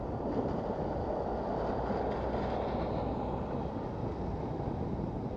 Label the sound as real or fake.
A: real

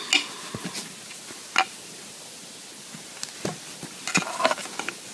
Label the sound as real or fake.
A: real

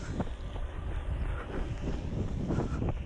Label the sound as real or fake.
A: real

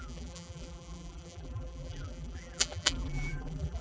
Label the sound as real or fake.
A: fake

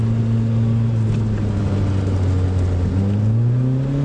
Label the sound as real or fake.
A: real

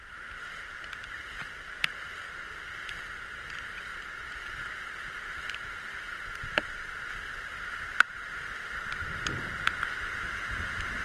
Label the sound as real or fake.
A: real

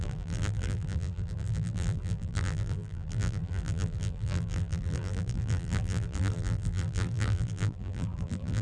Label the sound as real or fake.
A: fake